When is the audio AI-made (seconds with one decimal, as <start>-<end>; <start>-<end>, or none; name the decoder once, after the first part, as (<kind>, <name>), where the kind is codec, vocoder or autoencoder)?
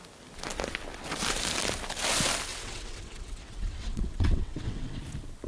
2.5-5.0 (vocoder, WaveNeXt)